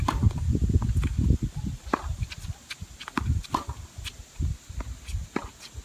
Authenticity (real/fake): real